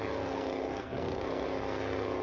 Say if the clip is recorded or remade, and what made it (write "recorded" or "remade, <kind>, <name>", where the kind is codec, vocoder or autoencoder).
remade, codec, SNAC